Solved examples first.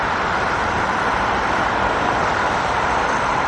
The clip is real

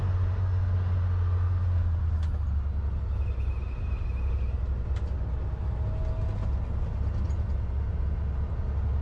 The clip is real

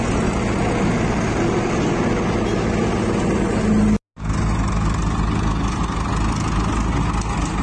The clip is real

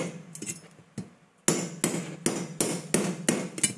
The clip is real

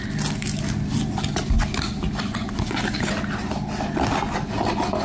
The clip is real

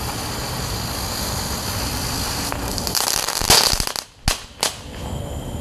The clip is real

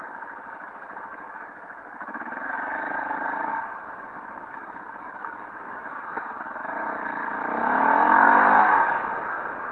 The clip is fake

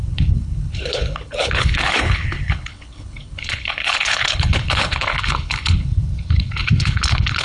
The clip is fake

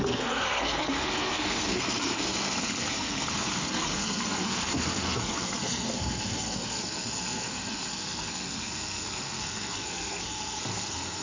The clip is fake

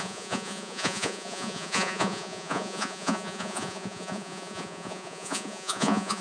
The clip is fake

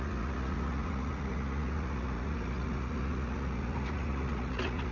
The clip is fake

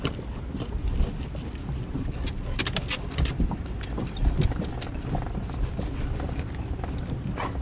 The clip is real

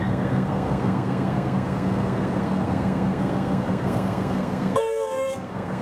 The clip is fake